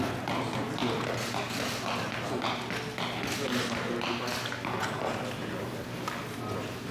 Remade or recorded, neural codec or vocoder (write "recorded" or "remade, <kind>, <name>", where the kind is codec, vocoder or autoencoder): recorded